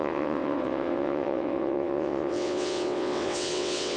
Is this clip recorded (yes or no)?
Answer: no